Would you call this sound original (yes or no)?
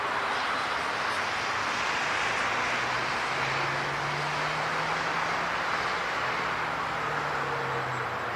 yes